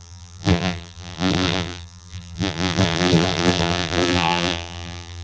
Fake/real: fake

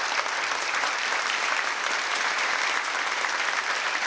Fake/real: fake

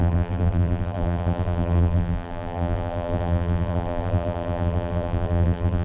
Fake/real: fake